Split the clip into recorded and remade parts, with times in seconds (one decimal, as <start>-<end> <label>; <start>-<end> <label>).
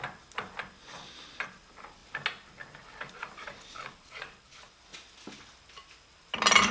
0.0-6.7 recorded